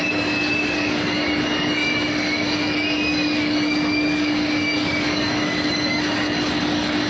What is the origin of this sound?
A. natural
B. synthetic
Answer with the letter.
B